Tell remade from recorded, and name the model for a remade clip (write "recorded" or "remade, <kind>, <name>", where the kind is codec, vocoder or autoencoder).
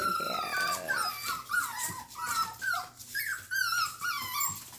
recorded